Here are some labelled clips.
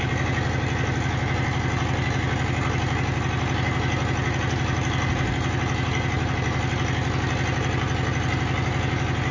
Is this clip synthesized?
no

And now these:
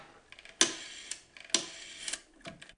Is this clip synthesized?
no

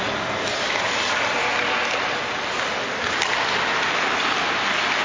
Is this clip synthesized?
no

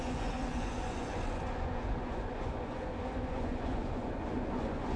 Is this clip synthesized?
yes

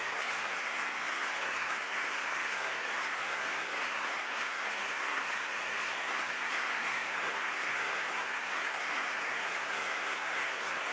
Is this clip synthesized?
yes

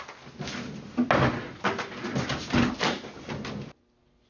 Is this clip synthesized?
no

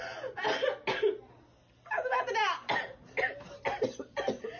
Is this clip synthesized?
no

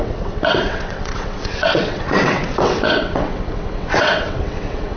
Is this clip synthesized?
yes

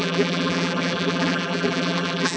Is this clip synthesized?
yes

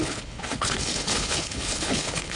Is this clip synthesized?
yes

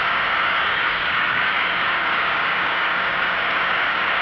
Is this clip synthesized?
yes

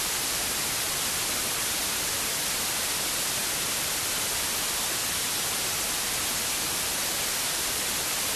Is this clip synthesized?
no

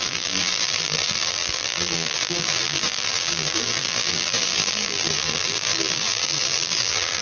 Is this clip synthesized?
yes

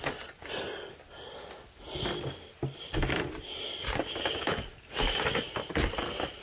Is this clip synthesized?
no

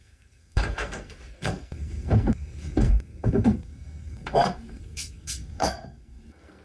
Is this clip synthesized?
yes